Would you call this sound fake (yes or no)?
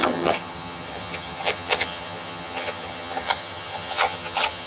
yes